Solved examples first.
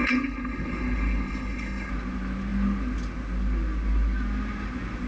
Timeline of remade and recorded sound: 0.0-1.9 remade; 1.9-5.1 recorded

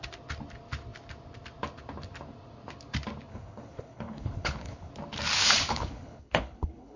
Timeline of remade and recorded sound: 0.0-3.3 recorded; 3.3-4.9 remade; 4.9-5.7 recorded; 5.7-7.0 remade

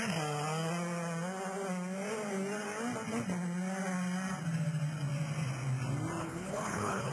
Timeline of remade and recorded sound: 0.0-6.2 recorded; 6.2-7.1 remade